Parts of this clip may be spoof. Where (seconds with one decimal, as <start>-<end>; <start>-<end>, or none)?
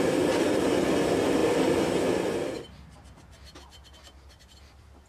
none